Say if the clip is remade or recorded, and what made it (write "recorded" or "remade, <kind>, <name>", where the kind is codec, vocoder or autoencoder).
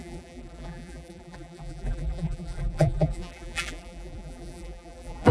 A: remade, vocoder, BigVGAN v2